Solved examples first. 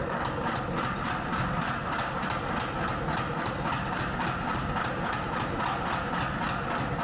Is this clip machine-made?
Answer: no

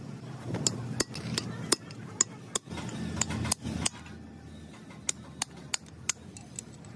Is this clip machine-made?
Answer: no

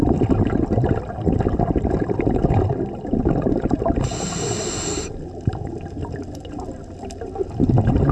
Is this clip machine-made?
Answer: no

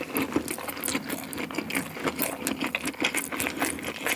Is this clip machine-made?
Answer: no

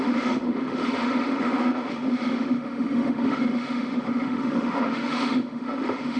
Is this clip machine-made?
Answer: yes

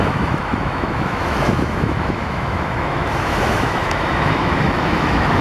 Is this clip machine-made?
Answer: yes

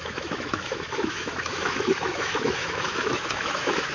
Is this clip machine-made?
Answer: yes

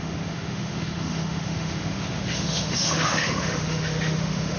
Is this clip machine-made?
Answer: yes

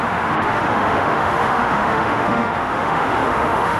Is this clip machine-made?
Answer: yes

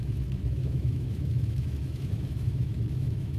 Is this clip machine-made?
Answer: yes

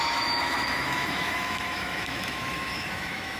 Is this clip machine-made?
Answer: yes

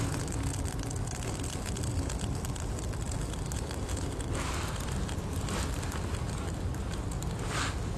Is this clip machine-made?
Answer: no